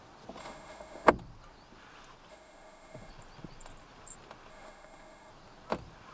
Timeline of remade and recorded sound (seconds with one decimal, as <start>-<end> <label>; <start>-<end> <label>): 0.0-0.4 recorded; 0.4-1.1 remade; 1.1-2.3 recorded; 2.3-3.1 remade; 3.1-4.5 recorded; 4.5-5.3 remade; 5.3-6.1 recorded